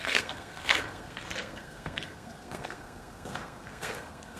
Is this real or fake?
fake